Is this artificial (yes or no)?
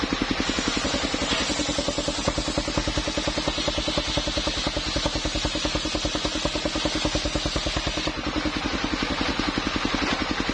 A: no